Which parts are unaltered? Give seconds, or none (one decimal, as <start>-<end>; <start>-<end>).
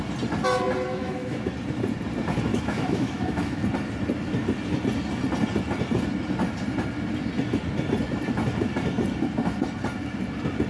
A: 0.0-0.9; 1.5-2.5; 3.6-10.7